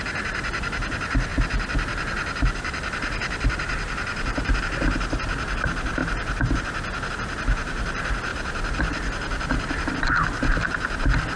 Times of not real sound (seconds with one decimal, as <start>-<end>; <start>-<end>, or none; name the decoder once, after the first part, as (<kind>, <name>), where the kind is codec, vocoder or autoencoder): 1.3-4.6 (vocoder, BigVGAN v2); 8.3-9.9